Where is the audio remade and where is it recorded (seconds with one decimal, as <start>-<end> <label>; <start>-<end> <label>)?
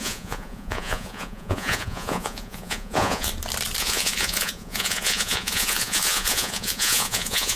0.0-3.3 remade; 3.3-3.8 recorded; 3.8-7.6 remade